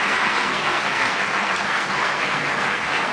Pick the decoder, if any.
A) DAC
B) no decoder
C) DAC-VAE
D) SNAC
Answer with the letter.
D